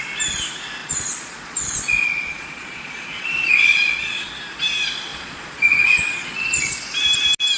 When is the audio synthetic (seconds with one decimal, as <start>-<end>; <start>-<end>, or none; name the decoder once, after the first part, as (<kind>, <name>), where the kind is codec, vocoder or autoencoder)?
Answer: 0.8-4.3 (vocoder, Vocos); 5.1-6.7